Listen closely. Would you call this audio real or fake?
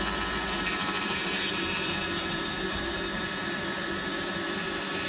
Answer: fake